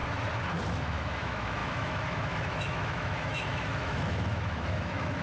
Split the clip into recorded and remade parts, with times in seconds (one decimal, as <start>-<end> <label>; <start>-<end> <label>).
0.0-0.7 recorded; 0.7-5.2 remade